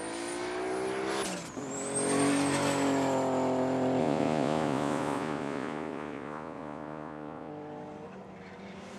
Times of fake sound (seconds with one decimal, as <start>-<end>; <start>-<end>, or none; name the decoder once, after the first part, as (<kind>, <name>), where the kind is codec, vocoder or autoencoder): 4.0-7.5 (vocoder, Vocos)